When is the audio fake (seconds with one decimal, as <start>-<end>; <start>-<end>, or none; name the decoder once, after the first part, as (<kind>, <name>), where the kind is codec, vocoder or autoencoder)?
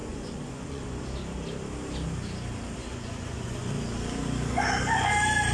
0.0-1.0 (vocoder, Vocos); 2.8-3.7; 4.5-5.1